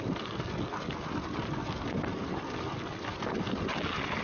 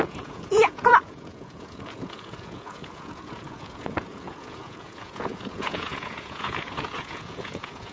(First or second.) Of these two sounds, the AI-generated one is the second